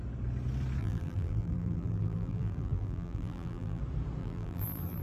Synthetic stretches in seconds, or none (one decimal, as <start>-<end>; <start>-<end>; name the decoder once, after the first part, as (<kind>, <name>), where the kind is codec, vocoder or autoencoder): 0.8-3.8 (vocoder, BigVGAN v2); 4.2-5.0

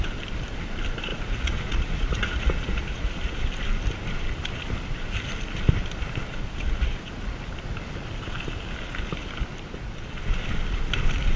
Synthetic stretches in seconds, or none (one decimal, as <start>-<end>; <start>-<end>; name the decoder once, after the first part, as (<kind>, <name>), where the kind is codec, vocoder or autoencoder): 1.1-3.4 (vocoder, Vocos); 6.3-7.1

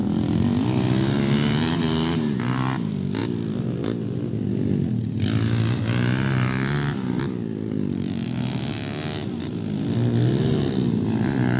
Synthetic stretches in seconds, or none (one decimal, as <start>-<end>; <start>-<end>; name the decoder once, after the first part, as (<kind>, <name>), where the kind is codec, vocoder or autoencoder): none

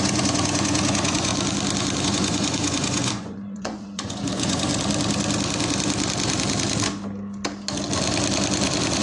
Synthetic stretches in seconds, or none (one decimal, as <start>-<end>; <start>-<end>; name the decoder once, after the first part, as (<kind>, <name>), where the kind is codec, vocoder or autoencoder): 0.0-1.3 (vocoder, Vocos); 2.0-4.7

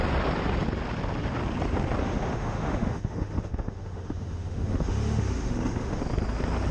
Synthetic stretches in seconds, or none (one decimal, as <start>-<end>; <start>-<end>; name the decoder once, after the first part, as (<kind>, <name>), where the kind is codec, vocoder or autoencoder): 2.0-6.0 (autoencoder, DAC-VAE)

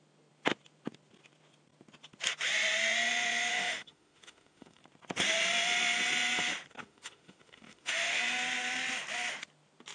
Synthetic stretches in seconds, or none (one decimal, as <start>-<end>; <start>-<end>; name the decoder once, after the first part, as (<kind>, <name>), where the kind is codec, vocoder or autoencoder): 3.5-4.8 (autoencoder, DAC-VAE); 6.7-8.2

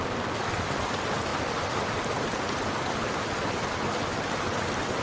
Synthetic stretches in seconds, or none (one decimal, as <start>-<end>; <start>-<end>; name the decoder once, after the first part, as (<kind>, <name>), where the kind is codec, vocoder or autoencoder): none

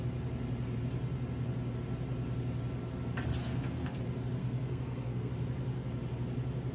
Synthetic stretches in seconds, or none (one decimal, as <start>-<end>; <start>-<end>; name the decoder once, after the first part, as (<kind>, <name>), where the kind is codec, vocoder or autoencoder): 3.4-4.0 (codec, SNAC); 4.4-5.3